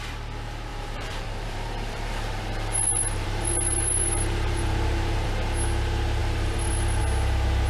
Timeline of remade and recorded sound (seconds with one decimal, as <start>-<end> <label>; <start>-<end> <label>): 0.0-0.7 recorded; 0.7-5.3 remade; 5.3-6.2 recorded; 6.2-7.0 remade; 7.0-7.7 recorded